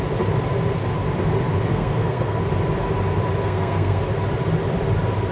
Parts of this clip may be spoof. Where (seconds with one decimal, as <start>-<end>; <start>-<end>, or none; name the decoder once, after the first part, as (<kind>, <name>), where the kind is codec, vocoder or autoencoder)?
1.7-2.4 (codec, SNAC); 3.4-4.0